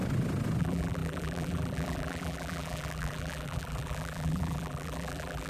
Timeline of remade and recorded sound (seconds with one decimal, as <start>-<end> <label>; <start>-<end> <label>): 0.0-0.6 recorded; 0.6-5.5 remade